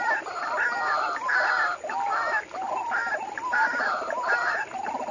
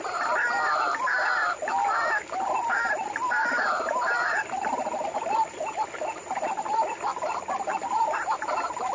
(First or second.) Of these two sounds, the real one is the first